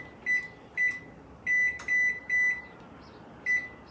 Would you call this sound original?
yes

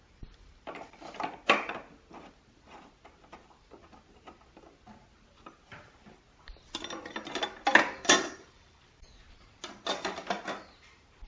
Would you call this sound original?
yes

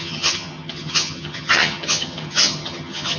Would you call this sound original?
no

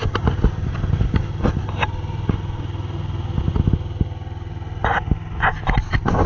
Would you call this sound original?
yes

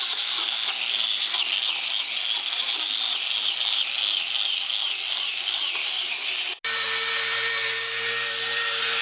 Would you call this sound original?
yes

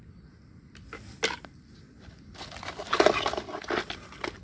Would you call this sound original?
yes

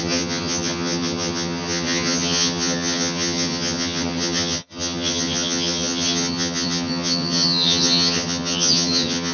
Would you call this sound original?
no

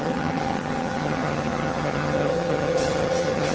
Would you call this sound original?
no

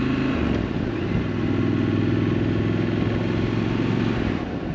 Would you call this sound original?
yes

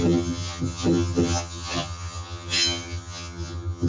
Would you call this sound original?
no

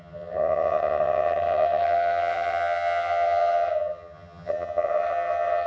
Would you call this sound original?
no